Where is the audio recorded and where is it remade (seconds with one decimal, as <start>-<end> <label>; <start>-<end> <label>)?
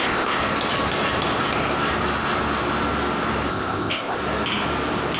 0.0-0.4 remade; 0.4-3.5 recorded; 3.5-4.2 remade; 4.2-5.2 recorded